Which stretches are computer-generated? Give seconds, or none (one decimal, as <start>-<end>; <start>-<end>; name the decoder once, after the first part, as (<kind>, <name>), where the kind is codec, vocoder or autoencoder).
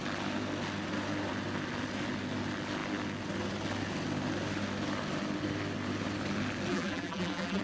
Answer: 6.7-7.6 (vocoder, BigVGAN v2)